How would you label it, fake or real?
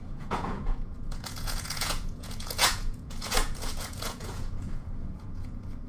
fake